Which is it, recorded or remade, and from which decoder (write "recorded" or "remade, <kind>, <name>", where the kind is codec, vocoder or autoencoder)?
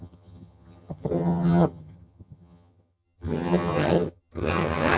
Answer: remade, vocoder, HiFi-GAN